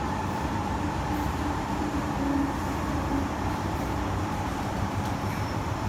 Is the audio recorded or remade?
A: remade